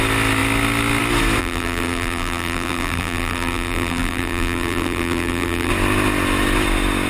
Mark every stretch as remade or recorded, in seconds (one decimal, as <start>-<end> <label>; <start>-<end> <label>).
0.0-1.4 recorded; 1.4-5.7 remade; 5.7-7.1 recorded